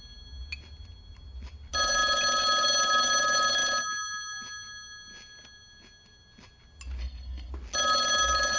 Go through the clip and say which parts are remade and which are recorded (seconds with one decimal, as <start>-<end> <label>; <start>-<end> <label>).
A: 0.0-7.0 recorded; 7.0-7.5 remade; 7.5-8.6 recorded